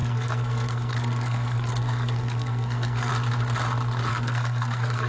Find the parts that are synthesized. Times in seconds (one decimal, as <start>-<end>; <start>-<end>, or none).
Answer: 0.0-3.1; 4.1-5.1